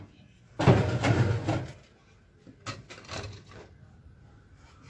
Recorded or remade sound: recorded